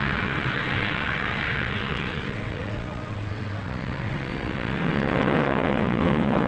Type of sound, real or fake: fake